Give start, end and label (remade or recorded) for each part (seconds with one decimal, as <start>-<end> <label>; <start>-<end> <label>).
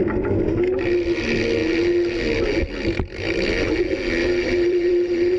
0.0-4.2 recorded; 4.2-5.4 remade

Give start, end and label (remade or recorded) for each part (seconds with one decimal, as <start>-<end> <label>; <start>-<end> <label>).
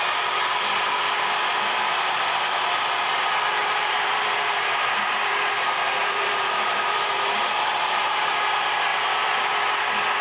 0.0-3.6 recorded; 3.6-5.3 remade; 5.3-6.0 recorded; 6.0-8.5 remade; 8.5-8.9 recorded; 8.9-9.5 remade; 9.5-10.2 recorded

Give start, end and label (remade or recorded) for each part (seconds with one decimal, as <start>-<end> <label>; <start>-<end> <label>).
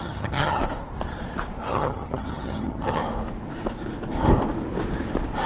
0.0-0.6 remade; 0.6-1.7 recorded; 1.7-3.0 remade; 3.0-5.5 recorded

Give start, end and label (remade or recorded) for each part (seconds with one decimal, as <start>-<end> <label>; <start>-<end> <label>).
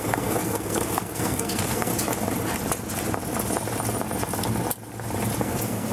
0.0-1.9 remade; 1.9-5.4 recorded; 5.4-5.9 remade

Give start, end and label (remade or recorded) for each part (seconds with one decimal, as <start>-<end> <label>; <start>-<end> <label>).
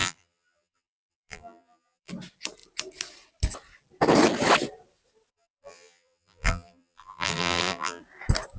0.0-2.1 remade; 2.1-5.3 recorded; 5.3-8.0 remade; 8.0-8.6 recorded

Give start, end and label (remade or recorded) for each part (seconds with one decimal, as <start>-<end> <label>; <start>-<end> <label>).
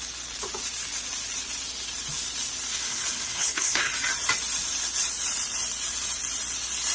0.0-2.7 recorded; 2.7-3.9 remade; 3.9-6.9 recorded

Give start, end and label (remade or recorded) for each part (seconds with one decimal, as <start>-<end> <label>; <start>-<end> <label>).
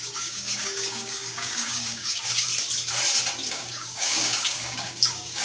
0.0-2.5 remade; 2.5-3.5 recorded; 3.5-5.4 remade